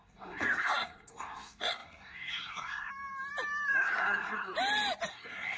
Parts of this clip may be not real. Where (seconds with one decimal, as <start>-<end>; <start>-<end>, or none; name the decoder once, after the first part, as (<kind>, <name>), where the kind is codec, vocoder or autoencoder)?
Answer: 0.0-2.9 (codec, SNAC); 3.8-4.5; 5.1-5.6